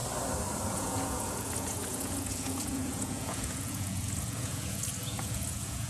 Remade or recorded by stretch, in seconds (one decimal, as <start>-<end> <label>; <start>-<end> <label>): 0.0-0.7 recorded; 0.7-5.9 remade